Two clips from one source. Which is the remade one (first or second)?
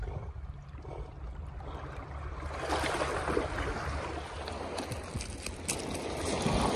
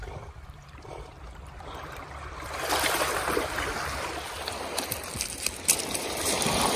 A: second